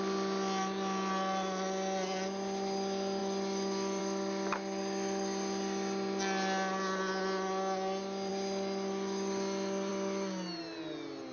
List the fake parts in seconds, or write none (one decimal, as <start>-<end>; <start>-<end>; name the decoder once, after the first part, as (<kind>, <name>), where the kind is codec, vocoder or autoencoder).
none